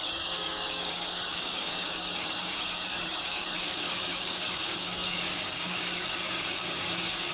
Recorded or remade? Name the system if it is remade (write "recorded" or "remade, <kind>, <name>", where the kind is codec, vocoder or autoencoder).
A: remade, codec, DAC